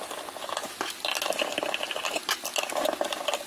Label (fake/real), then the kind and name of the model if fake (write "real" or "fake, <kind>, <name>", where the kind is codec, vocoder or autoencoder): real